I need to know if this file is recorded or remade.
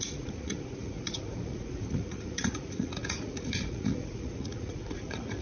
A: remade